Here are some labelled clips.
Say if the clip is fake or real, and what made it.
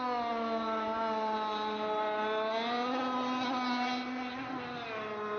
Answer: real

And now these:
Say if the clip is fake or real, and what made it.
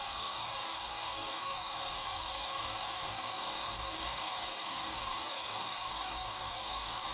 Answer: fake, codec, DAC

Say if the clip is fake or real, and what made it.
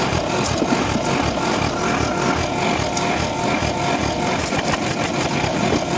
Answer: real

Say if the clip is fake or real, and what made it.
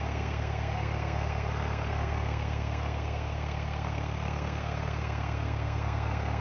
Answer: fake, codec, SNAC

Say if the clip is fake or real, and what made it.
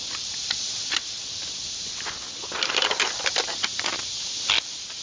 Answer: real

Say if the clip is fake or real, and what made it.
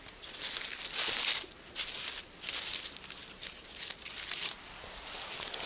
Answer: real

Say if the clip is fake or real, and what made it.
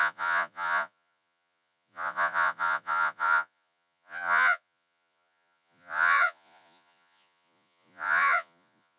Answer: fake, vocoder, Vocos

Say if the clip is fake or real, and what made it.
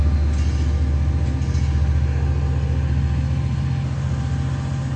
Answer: real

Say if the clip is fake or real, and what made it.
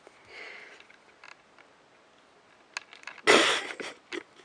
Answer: real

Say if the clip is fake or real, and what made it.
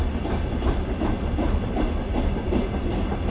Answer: real